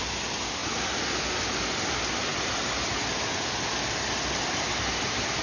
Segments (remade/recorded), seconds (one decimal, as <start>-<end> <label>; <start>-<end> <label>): 0.0-5.4 recorded